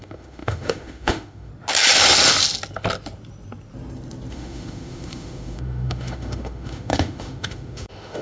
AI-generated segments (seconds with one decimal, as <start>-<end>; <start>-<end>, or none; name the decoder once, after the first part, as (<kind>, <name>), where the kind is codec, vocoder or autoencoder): 0.0-1.5 (autoencoder, DAC-VAE); 4.3-8.2